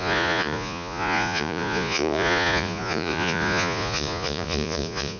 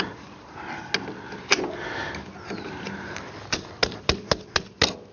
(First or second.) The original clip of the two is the second